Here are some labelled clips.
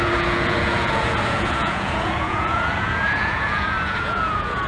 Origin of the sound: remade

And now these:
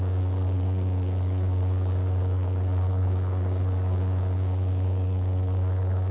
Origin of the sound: remade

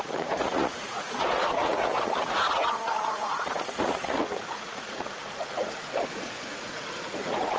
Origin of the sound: remade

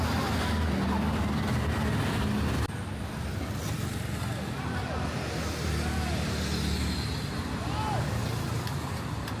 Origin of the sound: recorded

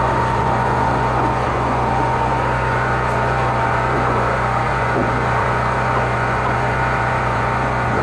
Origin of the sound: remade